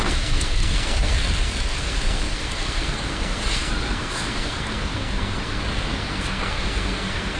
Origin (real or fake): fake